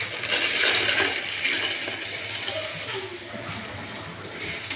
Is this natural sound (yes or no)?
yes